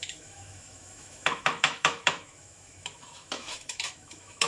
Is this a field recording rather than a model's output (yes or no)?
no